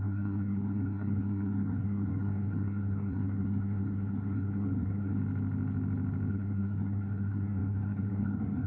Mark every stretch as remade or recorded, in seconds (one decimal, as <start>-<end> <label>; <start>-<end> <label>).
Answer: 0.0-5.2 remade; 5.2-6.3 recorded; 6.3-8.7 remade